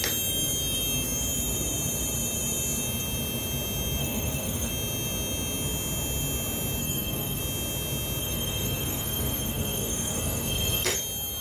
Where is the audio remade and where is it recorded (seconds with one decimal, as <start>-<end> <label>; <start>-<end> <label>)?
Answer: 0.0-4.0 recorded; 4.0-4.7 remade; 4.7-6.8 recorded; 6.8-7.4 remade; 7.4-8.2 recorded; 8.2-11.0 remade; 11.0-11.4 recorded